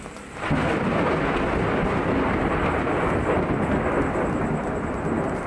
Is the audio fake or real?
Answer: real